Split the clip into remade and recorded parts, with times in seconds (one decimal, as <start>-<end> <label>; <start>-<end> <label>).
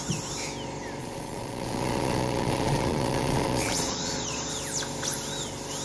0.0-1.0 recorded; 1.0-4.5 remade; 4.5-5.8 recorded